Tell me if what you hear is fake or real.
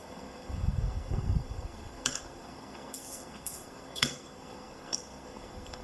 fake